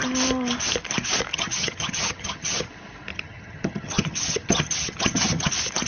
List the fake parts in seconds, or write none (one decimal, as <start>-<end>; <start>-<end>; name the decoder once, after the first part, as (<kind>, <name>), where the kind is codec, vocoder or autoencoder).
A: 1.3-2.7 (vocoder, HiFi-GAN); 3.1-5.5